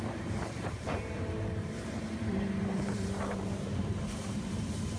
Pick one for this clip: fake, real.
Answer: fake